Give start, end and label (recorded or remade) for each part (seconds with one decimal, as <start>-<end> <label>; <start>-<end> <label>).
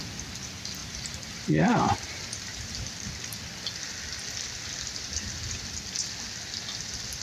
0.0-0.8 recorded; 0.8-3.1 remade; 3.1-7.2 recorded